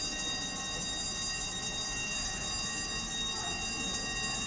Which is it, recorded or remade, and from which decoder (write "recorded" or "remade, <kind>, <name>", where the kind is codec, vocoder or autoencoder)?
recorded